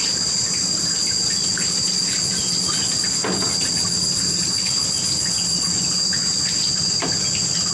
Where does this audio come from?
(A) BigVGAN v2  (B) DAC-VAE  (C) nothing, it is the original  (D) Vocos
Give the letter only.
C